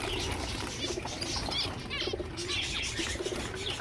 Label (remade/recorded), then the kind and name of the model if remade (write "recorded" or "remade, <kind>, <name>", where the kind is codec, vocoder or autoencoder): recorded